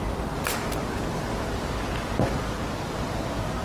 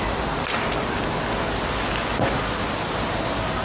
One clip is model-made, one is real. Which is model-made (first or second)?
first